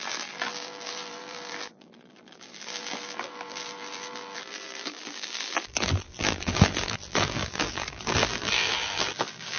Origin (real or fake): fake